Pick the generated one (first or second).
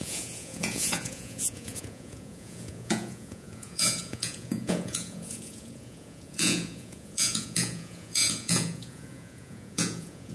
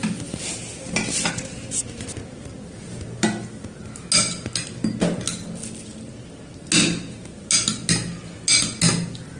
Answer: first